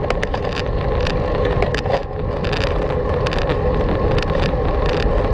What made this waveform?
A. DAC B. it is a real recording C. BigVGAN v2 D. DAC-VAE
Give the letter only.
B